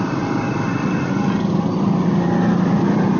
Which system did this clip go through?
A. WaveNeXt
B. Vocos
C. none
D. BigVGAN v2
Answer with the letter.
C